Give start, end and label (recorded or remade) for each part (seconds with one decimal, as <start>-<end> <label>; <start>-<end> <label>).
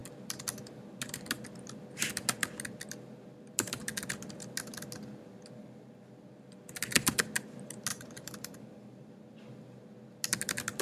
0.0-7.9 recorded; 7.9-9.1 remade; 9.1-10.8 recorded